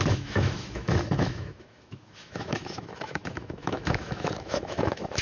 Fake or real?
fake